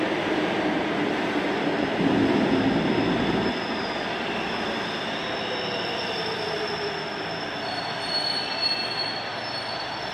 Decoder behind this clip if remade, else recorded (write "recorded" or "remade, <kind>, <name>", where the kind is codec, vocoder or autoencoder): recorded